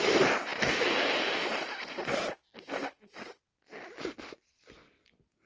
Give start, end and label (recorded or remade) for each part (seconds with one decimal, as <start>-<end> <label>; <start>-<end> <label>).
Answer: 0.0-5.5 recorded